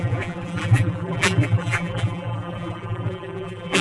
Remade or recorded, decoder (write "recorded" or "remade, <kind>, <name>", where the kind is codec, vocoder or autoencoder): remade, vocoder, BigVGAN v2